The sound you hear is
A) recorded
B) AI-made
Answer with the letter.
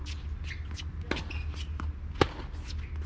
A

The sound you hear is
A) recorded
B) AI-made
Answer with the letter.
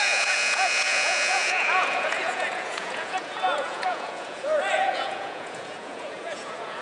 B